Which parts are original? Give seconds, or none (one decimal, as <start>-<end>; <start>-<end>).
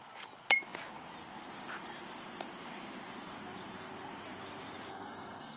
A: 0.0-4.9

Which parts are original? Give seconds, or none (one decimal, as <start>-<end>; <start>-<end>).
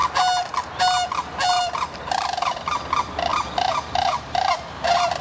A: 0.0-1.5; 2.6-3.3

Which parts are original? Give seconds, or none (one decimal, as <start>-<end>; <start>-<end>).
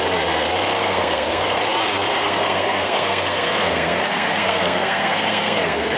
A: 0.0-0.8; 1.6-2.1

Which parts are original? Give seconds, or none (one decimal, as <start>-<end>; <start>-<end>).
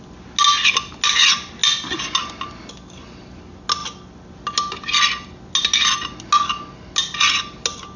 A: 0.0-8.0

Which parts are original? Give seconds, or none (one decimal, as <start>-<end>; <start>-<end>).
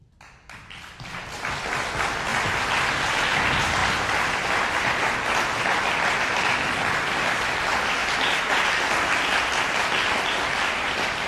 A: 0.0-11.3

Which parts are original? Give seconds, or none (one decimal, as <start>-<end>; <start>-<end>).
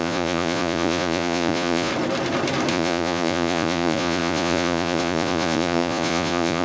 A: 1.9-2.7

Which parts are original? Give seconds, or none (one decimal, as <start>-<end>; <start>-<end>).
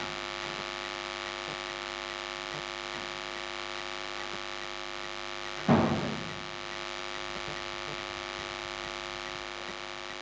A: 0.0-10.2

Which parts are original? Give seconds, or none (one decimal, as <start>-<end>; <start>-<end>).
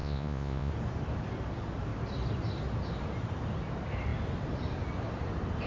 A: 0.7-5.7